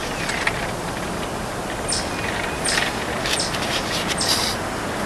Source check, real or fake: real